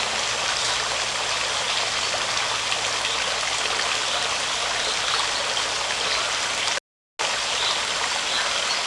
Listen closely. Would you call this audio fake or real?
real